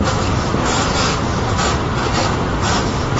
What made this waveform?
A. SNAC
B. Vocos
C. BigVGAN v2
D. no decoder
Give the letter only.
D